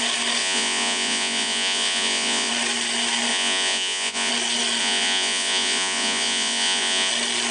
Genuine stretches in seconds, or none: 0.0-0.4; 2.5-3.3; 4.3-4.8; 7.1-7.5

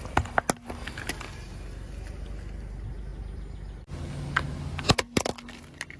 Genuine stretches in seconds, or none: 0.0-6.0